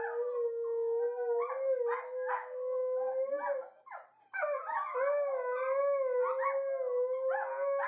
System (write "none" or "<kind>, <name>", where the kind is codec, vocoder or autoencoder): none